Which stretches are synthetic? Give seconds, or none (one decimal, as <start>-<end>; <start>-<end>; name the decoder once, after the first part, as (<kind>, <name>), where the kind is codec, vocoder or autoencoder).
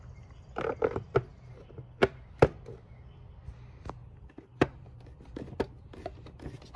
4.0-5.3 (vocoder, BigVGAN v2)